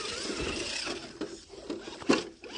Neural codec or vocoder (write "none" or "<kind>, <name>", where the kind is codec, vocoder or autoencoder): none